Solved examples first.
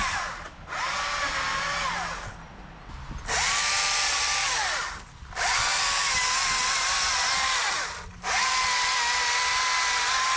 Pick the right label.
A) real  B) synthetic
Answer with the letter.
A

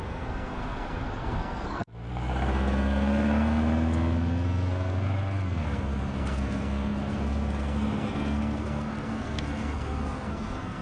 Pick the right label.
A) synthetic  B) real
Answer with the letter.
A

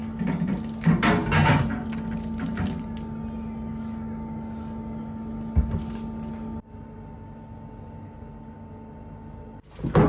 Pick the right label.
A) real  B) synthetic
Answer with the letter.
A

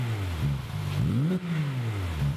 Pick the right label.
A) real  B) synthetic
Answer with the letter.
A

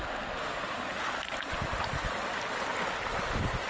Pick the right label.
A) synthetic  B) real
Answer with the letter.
B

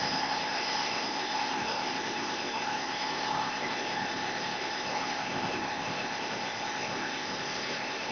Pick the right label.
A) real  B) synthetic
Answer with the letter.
B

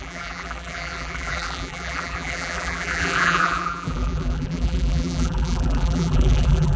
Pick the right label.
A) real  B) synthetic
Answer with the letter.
B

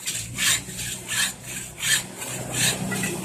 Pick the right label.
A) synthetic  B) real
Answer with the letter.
B